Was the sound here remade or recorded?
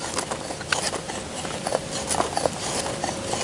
recorded